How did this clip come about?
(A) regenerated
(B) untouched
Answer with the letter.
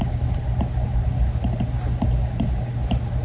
B